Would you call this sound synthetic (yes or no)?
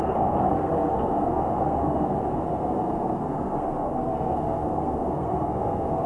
yes